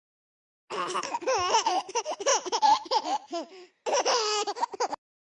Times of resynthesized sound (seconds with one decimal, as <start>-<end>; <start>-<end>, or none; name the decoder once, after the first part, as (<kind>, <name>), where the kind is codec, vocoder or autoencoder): 2.3-3.7 (vocoder, BigVGAN v2)